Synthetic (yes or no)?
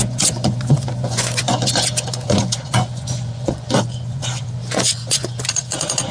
yes